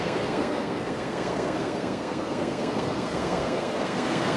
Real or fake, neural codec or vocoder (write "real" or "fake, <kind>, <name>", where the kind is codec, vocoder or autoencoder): fake, codec, SNAC